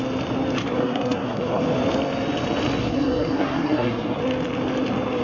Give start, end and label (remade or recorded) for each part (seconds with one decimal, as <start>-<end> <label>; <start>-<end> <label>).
0.0-0.8 recorded; 0.8-1.6 remade; 1.6-2.8 recorded; 2.8-4.2 remade; 4.2-5.2 recorded